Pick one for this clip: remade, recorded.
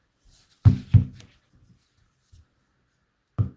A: recorded